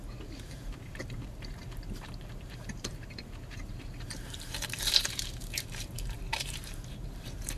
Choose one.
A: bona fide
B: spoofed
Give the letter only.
B